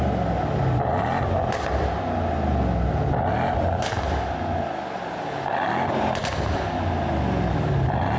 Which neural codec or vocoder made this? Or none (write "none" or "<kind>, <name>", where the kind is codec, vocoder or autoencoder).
none